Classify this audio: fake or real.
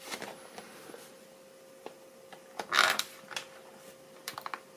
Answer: real